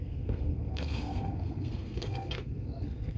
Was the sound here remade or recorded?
remade